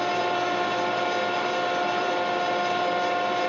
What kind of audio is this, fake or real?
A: real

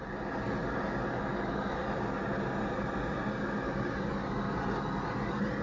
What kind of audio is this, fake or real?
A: real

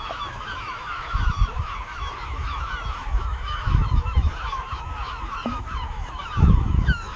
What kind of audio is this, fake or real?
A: fake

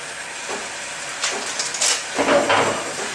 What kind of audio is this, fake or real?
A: real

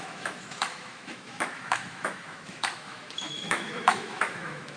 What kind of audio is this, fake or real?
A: fake